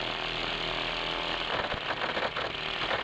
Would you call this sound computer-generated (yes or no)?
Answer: no